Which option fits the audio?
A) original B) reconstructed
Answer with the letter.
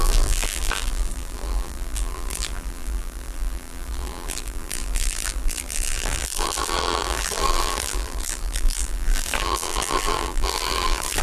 B